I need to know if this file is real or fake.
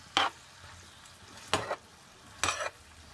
real